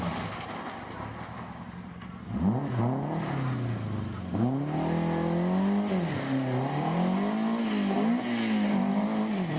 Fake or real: real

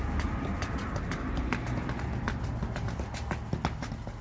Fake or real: real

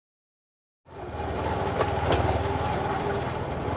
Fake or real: real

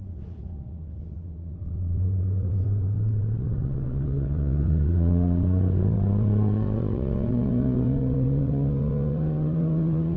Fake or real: fake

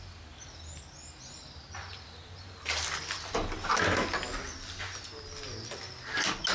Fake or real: real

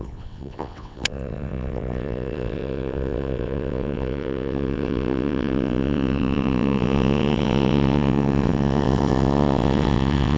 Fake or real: fake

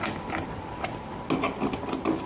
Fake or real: real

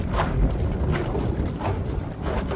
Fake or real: real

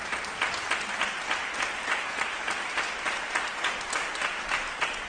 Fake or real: real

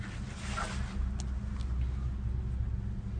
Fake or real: real